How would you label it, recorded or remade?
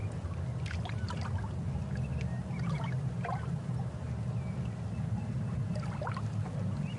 recorded